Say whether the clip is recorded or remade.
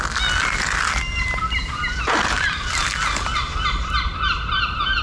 recorded